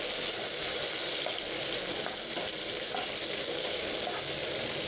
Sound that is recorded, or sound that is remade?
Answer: recorded